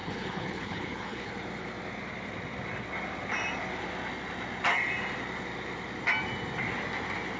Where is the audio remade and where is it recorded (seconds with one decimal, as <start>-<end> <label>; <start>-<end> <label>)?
0.0-1.3 remade; 1.3-7.4 recorded